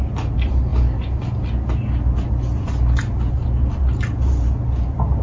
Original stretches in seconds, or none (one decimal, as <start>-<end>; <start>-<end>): 0.0-5.2